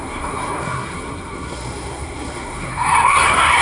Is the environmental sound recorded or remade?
remade